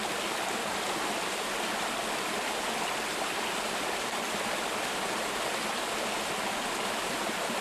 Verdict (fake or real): real